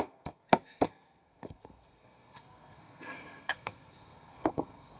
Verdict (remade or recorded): remade